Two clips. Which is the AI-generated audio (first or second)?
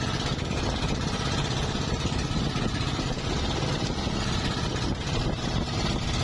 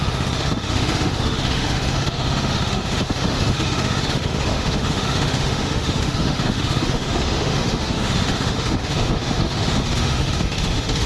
second